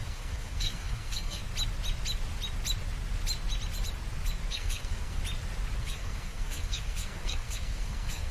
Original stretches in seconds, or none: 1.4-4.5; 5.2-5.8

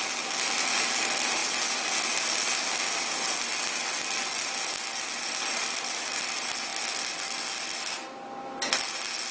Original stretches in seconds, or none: 0.0-9.3

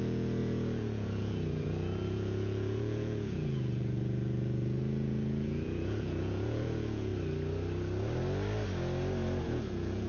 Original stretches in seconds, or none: 7.1-9.4

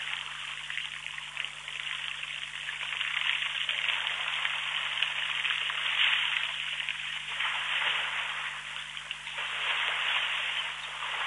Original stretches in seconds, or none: 0.0-6.9; 7.6-11.3